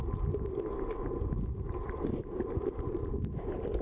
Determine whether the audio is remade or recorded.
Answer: recorded